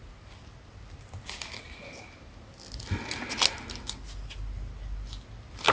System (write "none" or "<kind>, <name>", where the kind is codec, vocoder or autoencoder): none